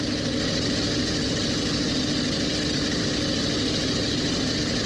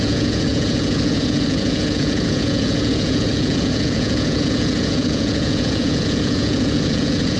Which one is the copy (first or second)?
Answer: second